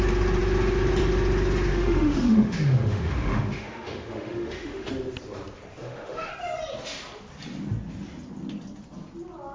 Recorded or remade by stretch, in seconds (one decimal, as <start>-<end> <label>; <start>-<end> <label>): 0.0-1.7 recorded; 1.7-4.9 remade; 4.9-5.8 recorded; 5.8-6.3 remade; 6.3-9.5 recorded